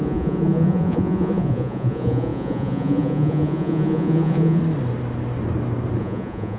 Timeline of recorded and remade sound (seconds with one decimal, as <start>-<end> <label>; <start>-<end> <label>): 0.0-4.6 remade; 4.6-6.0 recorded; 6.0-6.6 remade

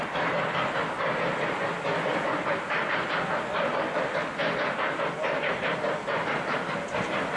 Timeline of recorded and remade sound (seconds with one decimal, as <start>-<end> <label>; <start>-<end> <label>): 0.0-7.4 recorded